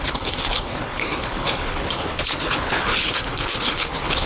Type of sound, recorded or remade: remade